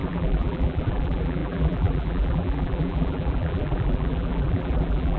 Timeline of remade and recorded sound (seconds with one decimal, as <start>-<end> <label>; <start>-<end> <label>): 0.0-5.2 remade